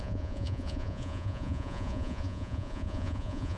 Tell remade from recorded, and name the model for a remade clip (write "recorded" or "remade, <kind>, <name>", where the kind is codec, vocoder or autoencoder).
remade, vocoder, Vocos